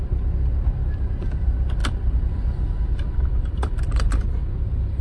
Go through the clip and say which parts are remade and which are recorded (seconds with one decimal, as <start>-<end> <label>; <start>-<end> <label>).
0.0-1.8 recorded; 1.8-4.4 remade; 4.4-5.0 recorded